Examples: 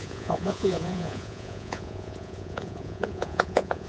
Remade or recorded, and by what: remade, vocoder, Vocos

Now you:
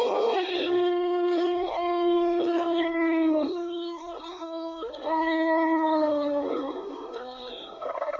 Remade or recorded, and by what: remade, codec, SNAC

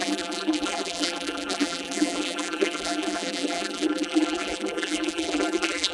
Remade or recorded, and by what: remade, vocoder, BigVGAN v2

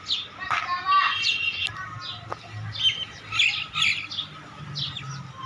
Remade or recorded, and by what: recorded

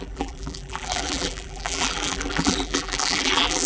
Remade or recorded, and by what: remade, vocoder, BigVGAN v2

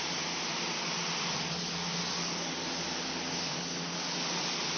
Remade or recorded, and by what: recorded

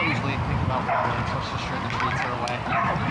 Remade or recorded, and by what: recorded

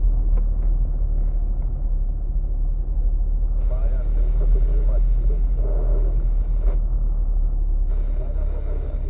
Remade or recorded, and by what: recorded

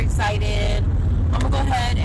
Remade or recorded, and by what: recorded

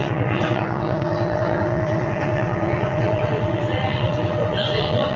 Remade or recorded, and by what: remade, vocoder, WaveNeXt